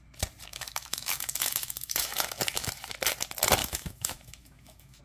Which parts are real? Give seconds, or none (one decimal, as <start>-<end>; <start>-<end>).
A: 0.0-0.5; 2.7-3.6